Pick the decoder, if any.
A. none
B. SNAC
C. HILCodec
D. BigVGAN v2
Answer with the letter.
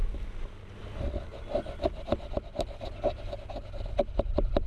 A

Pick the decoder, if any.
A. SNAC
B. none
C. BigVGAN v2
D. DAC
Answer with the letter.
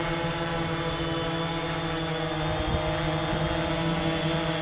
B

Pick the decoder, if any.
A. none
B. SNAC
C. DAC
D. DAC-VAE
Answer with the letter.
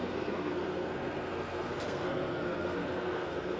B